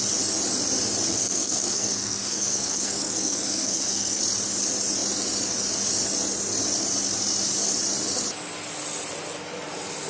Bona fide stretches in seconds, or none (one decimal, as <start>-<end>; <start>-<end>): 0.0-1.1; 4.2-10.1

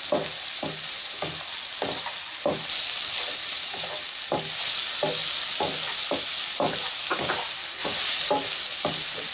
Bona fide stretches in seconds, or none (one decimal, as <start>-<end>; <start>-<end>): 0.0-3.4; 3.9-7.8; 8.3-9.3

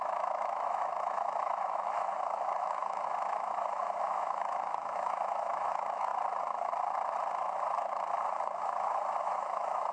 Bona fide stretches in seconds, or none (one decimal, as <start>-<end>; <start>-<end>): 6.1-9.2

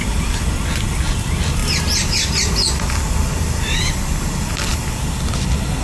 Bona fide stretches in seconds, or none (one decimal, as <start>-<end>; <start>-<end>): 0.0-5.8

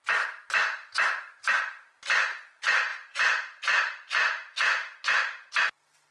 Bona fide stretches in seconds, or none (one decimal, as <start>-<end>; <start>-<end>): 0.0-6.1